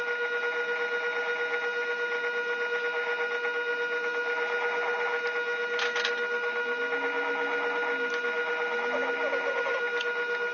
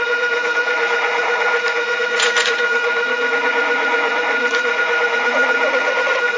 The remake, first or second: second